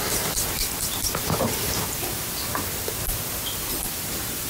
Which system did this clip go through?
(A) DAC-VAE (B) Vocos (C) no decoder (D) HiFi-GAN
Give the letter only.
C